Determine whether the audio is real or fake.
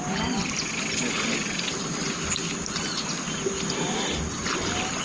real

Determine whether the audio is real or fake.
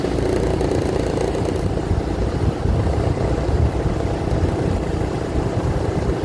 real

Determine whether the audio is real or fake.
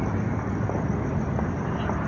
real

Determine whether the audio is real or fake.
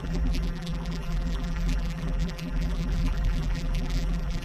fake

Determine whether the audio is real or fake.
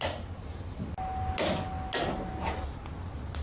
real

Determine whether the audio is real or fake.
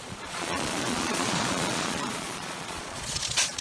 fake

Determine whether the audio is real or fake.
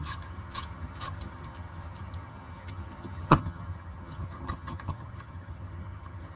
fake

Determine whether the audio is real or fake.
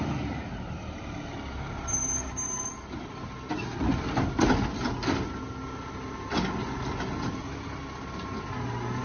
real